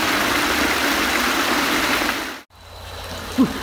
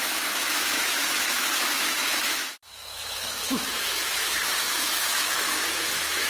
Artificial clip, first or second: second